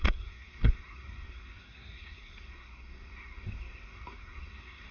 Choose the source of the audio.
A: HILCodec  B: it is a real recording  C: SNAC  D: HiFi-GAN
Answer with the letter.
C